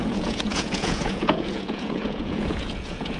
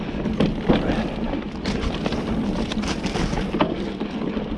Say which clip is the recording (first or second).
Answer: second